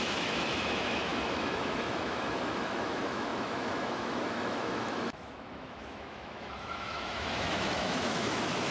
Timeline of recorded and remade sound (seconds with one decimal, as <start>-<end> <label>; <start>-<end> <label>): 0.0-8.7 remade